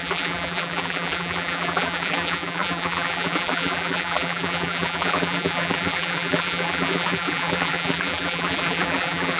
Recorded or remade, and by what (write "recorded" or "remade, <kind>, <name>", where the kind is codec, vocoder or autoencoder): remade, vocoder, BigVGAN v2